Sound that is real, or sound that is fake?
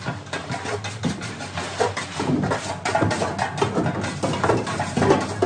real